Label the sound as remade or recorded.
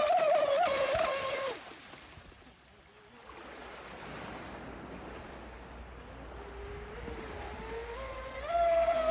recorded